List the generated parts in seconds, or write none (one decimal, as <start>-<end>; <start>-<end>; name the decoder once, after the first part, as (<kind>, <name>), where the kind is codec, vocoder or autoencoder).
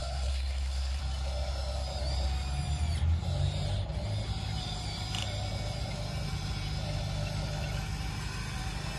0.0-1.0 (codec, SNAC)